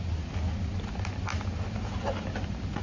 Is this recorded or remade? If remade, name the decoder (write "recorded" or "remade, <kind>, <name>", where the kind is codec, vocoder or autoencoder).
recorded